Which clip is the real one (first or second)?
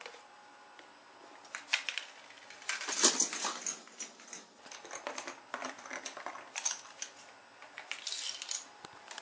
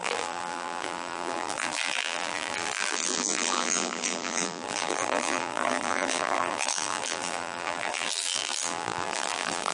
first